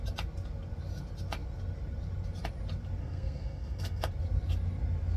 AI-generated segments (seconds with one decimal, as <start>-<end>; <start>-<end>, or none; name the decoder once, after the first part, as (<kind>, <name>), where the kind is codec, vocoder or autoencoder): 3.0-4.1 (codec, SNAC)